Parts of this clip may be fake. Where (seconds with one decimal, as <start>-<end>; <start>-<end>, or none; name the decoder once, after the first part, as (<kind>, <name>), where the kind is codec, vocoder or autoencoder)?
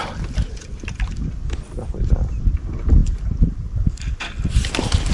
none